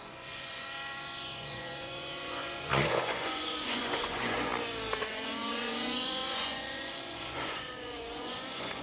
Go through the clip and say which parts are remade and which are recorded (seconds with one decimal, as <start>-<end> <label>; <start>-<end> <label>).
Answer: 0.0-4.5 remade; 4.5-5.0 recorded; 5.0-8.8 remade